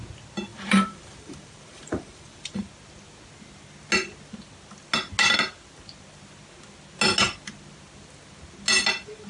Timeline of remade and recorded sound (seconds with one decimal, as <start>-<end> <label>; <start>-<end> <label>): 0.0-0.5 recorded; 0.5-2.7 remade; 2.7-9.3 recorded